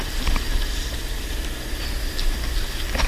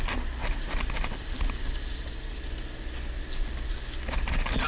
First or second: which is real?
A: second